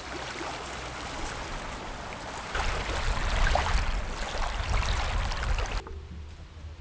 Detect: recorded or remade recorded